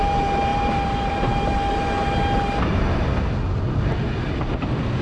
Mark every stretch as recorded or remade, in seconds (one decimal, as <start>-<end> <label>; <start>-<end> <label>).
0.0-0.5 recorded; 0.5-1.1 remade; 1.1-5.0 recorded